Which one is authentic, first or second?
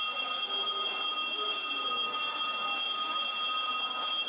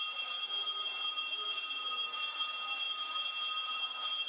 first